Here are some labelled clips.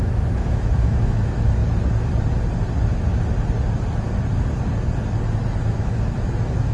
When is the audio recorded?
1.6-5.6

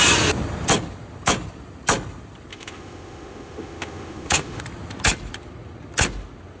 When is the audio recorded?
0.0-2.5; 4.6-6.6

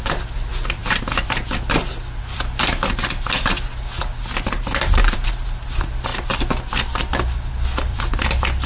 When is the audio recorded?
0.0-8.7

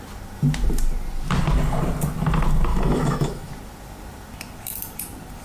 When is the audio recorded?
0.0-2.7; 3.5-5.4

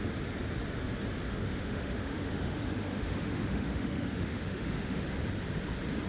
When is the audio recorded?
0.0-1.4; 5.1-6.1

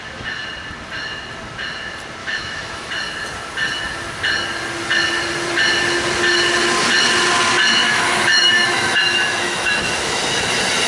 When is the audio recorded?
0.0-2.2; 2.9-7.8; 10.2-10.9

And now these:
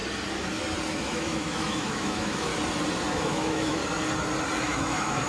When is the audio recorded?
0.0-1.0; 2.5-3.1; 3.8-4.6